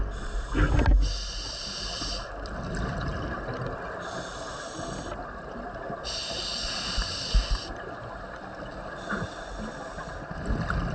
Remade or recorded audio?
recorded